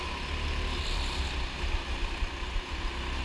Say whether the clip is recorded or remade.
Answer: recorded